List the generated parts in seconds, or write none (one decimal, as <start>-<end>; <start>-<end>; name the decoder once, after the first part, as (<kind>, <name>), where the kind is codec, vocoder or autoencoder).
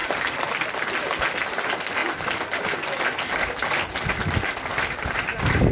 0.0-1.2 (vocoder, BigVGAN v2)